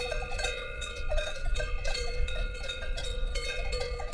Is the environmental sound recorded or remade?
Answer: remade